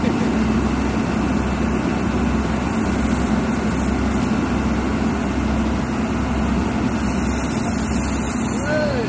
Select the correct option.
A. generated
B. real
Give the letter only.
B